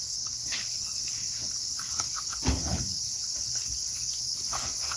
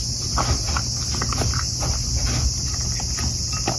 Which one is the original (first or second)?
second